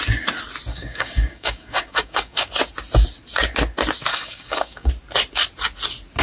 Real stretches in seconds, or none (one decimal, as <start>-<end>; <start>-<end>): 0.0-0.7; 2.5-4.1; 4.9-6.2